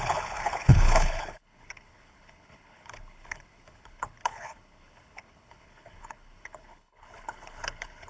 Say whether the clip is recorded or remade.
remade